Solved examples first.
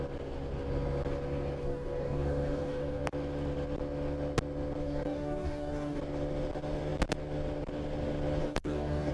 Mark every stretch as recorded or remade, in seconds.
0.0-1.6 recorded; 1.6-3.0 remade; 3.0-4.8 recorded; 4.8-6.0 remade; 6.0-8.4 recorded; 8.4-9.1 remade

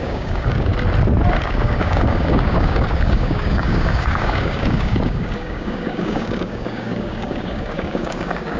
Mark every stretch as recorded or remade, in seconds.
0.0-0.7 remade; 0.7-1.4 recorded; 1.4-8.6 remade